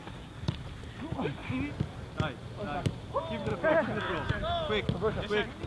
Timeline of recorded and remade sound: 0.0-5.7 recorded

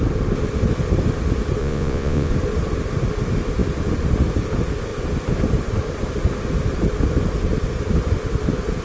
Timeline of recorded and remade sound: 0.0-1.6 recorded; 1.6-2.3 remade; 2.3-8.8 recorded

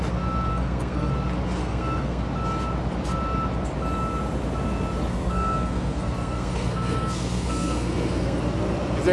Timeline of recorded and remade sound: 0.0-0.5 recorded; 0.5-1.1 remade; 1.1-1.6 recorded; 1.6-2.2 remade; 2.2-5.1 recorded; 5.1-8.4 remade; 8.4-9.1 recorded

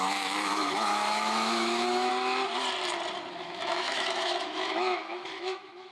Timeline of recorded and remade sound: 0.0-2.1 remade; 2.1-3.3 recorded; 3.3-5.9 remade

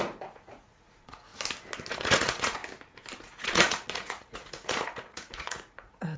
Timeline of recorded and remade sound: 0.0-1.3 remade; 1.3-1.9 recorded; 1.9-2.6 remade; 2.6-3.2 recorded; 3.2-6.2 remade

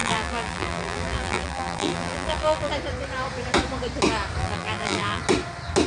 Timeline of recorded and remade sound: 0.0-2.7 remade; 2.7-4.4 recorded; 4.4-5.2 remade; 5.2-5.9 recorded

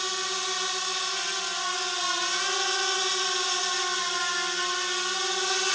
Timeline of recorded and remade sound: 0.0-5.7 recorded

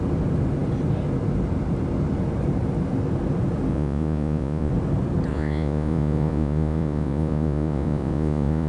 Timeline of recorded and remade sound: 0.0-3.7 recorded; 3.7-4.7 remade; 4.7-5.3 recorded; 5.3-8.7 remade